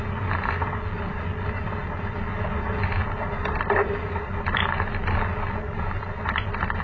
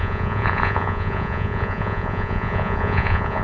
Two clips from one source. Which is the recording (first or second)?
first